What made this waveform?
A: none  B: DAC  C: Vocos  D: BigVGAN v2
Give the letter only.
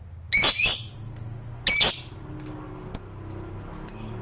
A